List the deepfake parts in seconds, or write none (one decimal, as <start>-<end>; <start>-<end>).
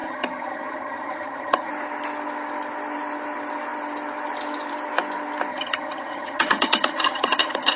0.0-1.7; 5.5-7.8